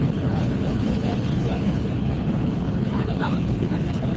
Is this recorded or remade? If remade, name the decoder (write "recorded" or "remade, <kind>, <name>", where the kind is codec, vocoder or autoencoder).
remade, codec, HILCodec